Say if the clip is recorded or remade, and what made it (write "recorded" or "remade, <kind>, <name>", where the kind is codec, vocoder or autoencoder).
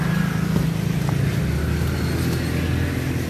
recorded